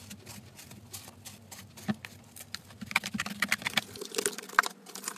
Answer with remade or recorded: recorded